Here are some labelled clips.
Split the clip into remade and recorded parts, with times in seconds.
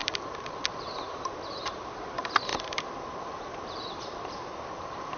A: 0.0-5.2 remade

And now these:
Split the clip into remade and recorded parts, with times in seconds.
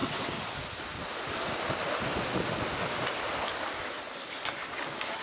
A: 0.0-5.2 recorded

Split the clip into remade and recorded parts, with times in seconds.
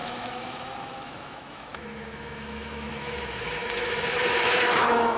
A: 0.0-5.2 remade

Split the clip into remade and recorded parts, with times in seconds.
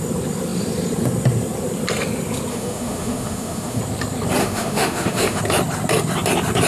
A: 0.0-2.5 recorded; 2.5-3.8 remade; 3.8-4.4 recorded; 4.4-5.4 remade; 5.4-6.7 recorded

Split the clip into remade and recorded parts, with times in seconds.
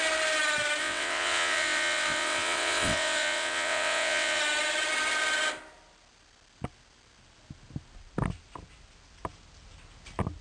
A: 0.0-0.8 recorded; 0.8-4.4 remade; 4.4-10.4 recorded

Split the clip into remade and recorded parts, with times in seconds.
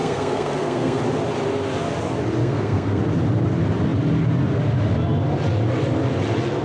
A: 0.0-1.0 remade; 1.0-2.4 recorded; 2.4-3.0 remade; 3.0-6.6 recorded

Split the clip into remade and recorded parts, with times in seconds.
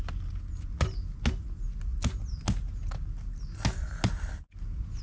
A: 0.0-5.0 recorded